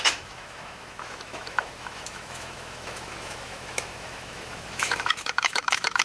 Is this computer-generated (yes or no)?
yes